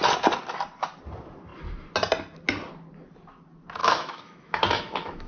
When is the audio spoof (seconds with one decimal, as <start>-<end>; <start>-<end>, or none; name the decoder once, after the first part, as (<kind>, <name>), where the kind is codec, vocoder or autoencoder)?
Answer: 3.8-5.3 (autoencoder, DAC-VAE)

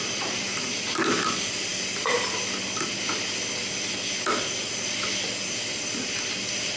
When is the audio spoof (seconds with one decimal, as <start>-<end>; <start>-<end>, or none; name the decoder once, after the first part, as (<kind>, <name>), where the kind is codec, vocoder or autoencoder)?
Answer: none

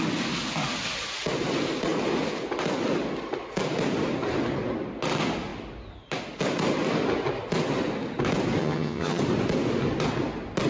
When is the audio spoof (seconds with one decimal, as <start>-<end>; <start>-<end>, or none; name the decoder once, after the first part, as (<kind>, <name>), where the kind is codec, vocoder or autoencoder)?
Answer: 8.6-9.2 (vocoder, HiFi-GAN)

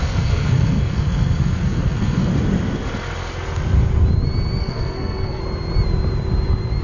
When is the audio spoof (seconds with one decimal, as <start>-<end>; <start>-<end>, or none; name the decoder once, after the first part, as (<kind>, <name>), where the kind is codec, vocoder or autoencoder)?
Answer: 0.0-2.3 (codec, SNAC); 4.6-5.4